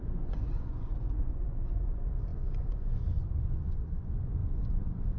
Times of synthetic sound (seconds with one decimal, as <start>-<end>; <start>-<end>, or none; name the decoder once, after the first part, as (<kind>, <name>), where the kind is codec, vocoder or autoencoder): 0.0-5.2 (vocoder, Vocos)